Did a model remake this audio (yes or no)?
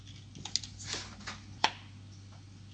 no